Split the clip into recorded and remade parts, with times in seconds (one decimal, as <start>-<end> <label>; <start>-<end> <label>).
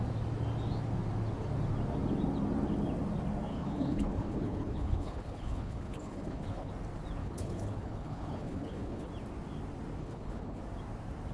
0.0-3.5 recorded; 3.5-6.7 remade; 6.7-7.2 recorded; 7.2-9.1 remade; 9.1-10.0 recorded; 10.0-10.6 remade; 10.6-11.3 recorded